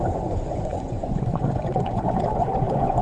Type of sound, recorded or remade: remade